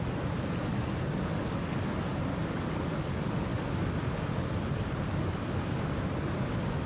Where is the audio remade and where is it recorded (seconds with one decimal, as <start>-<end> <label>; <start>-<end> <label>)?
0.0-6.9 recorded